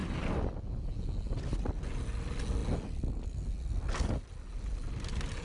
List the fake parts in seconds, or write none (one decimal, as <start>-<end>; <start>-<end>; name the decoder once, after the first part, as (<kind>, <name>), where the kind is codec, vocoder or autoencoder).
none

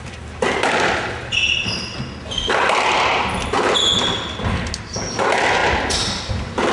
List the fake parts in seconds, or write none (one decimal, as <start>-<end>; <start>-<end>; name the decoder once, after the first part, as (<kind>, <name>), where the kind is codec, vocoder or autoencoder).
none